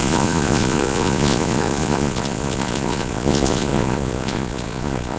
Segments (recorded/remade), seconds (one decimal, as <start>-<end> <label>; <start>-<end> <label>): 0.0-5.2 remade